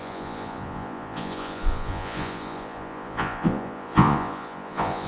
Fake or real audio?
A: fake